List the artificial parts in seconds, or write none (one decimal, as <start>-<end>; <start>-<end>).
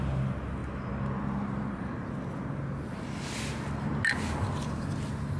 none